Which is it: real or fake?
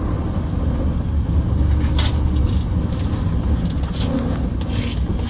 real